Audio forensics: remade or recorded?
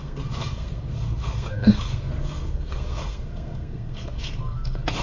remade